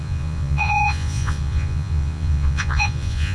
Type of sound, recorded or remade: remade